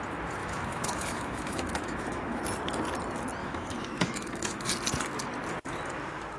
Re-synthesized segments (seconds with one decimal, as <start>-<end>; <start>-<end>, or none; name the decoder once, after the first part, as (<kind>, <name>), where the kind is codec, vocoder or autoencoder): 0.4-2.4 (autoencoder, DAC-VAE); 3.4-4.6